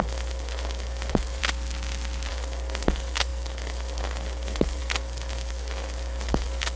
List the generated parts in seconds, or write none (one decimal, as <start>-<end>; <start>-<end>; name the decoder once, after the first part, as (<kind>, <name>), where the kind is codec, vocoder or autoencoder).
0.0-1.4 (codec, SNAC); 2.3-6.8

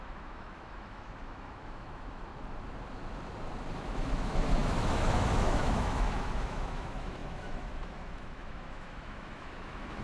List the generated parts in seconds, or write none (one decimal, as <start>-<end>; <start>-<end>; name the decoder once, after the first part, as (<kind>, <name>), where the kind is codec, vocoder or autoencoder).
0.0-2.3 (autoencoder, DAC-VAE); 3.7-10.0

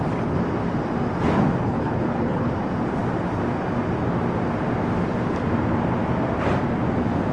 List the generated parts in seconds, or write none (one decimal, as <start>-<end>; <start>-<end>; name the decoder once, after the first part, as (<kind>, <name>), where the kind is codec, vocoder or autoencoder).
1.6-2.5 (codec, HILCodec)